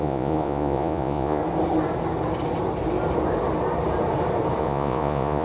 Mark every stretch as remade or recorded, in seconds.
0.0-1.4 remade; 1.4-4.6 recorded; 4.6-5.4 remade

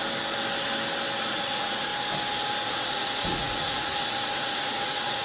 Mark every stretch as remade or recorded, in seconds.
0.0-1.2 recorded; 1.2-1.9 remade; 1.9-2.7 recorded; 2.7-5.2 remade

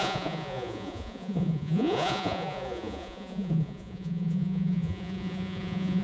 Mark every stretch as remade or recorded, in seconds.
0.0-6.0 remade

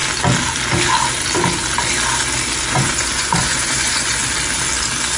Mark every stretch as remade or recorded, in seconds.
0.0-2.7 recorded; 2.7-4.2 remade; 4.2-5.2 recorded

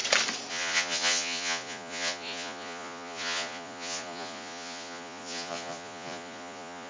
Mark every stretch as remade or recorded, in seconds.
0.0-0.5 recorded; 0.5-6.9 remade